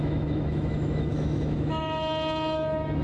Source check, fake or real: fake